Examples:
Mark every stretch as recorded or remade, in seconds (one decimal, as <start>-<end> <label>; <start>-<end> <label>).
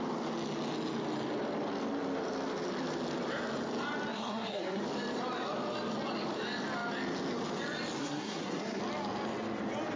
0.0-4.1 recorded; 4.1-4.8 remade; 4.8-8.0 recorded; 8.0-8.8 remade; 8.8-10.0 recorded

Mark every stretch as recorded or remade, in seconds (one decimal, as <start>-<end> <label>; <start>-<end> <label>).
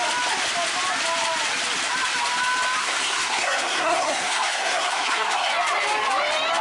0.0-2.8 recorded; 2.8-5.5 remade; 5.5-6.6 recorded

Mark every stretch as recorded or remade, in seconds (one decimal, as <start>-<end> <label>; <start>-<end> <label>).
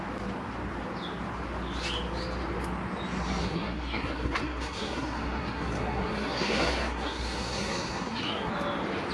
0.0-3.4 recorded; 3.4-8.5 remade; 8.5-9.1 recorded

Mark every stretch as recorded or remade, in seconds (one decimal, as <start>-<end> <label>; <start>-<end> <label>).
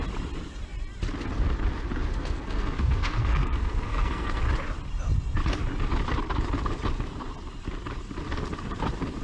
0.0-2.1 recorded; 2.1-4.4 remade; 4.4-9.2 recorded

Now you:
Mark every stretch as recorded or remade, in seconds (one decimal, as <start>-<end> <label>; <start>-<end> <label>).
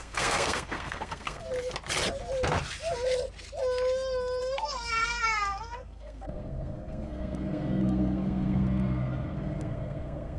0.0-1.4 remade; 1.4-4.4 recorded; 4.4-10.4 remade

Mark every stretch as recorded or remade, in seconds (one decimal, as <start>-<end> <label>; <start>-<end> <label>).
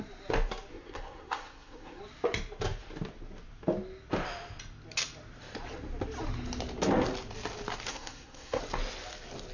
0.0-0.7 recorded; 0.7-2.0 remade; 2.0-7.9 recorded; 7.9-8.6 remade; 8.6-9.5 recorded